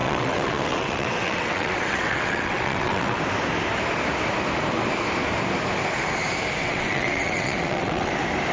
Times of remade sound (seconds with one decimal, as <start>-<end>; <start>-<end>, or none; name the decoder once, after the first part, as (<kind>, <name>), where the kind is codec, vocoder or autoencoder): 0.0-3.2 (vocoder, WaveNeXt); 6.6-8.1